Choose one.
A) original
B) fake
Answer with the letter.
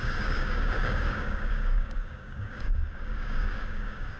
B